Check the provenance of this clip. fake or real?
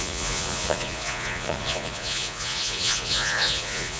fake